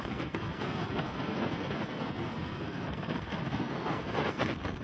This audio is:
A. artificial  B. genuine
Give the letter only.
A